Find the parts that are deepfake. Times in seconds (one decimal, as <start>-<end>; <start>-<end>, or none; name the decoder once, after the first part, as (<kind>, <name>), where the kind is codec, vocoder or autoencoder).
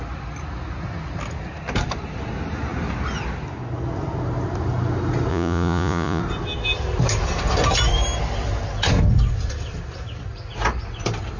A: 5.3-6.2 (vocoder, Vocos)